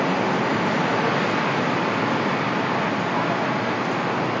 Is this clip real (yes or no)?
yes